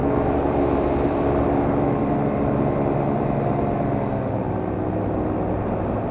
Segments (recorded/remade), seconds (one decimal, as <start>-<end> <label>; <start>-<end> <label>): 0.0-1.7 remade; 1.7-6.1 recorded